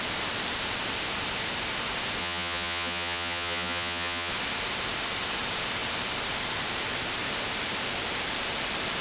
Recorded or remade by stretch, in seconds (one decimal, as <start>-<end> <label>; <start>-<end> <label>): 0.0-2.2 recorded; 2.2-4.3 remade; 4.3-9.0 recorded